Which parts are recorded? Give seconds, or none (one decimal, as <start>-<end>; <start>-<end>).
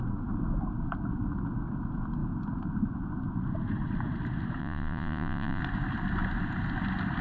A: 0.0-4.6; 5.6-7.2